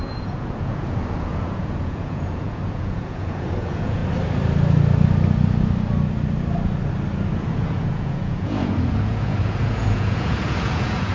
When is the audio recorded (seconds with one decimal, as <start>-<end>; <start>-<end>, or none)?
4.0-7.3